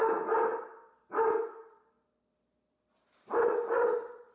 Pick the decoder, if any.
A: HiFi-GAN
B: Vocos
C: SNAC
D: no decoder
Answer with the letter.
D